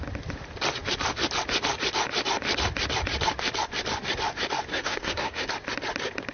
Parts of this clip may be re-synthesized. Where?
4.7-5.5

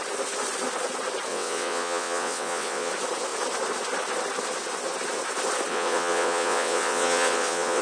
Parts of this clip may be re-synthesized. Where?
1.3-2.9; 5.7-7.8

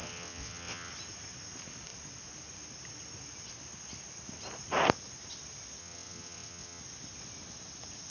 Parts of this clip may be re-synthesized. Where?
0.0-0.9; 5.8-6.8

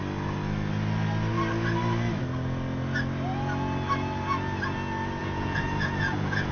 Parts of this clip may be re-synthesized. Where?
5.2-6.5

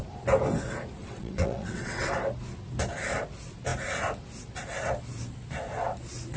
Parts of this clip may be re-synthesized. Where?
1.0-2.1

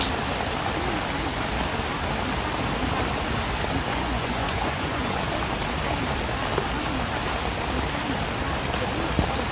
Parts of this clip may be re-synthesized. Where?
3.9-5.2

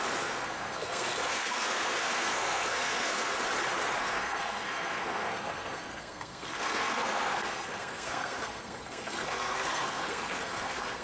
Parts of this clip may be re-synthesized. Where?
0.0-3.3; 4.0-11.0